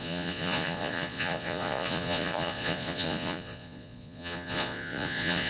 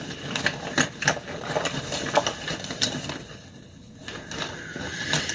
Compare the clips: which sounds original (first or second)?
second